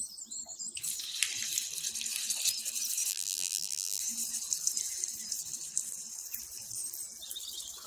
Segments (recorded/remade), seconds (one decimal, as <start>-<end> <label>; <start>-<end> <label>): 0.0-3.1 recorded; 3.1-4.0 remade; 4.0-7.9 recorded